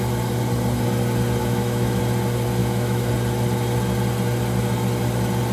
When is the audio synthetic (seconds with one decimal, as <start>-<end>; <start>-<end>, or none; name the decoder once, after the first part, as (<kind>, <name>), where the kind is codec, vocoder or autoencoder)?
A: 1.4-2.0 (autoencoder, DAC-VAE); 2.6-3.1